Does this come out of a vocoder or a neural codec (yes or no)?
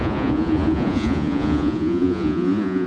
yes